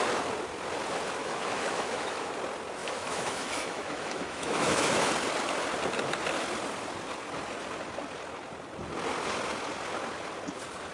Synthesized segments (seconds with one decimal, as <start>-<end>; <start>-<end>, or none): 1.2-2.3; 2.8-5.1